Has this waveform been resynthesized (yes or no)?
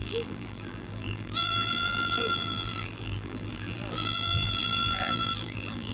yes